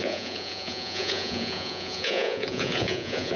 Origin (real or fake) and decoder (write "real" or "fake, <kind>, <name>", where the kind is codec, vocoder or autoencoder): fake, vocoder, Vocos